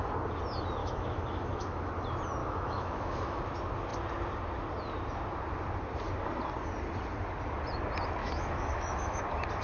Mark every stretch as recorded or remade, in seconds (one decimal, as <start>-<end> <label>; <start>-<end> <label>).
0.0-0.8 recorded; 0.8-1.9 remade; 1.9-2.4 recorded; 2.4-3.4 remade; 3.4-8.2 recorded; 8.2-9.2 remade; 9.2-9.6 recorded